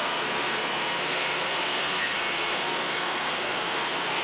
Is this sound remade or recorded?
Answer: remade